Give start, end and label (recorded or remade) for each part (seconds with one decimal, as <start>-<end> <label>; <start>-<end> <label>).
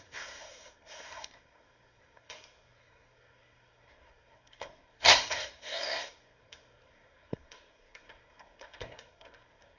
0.0-9.8 remade